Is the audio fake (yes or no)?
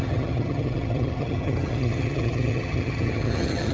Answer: yes